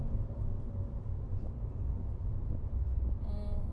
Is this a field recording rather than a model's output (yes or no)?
yes